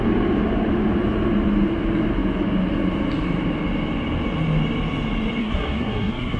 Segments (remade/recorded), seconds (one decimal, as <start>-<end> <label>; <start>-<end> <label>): 0.0-5.4 recorded; 5.4-6.4 remade